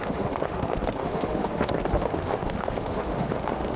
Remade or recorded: remade